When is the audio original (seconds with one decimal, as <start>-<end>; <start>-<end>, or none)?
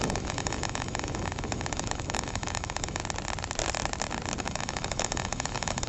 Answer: 3.0-4.4